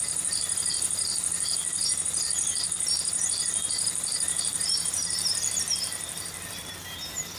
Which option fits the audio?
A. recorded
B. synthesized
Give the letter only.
B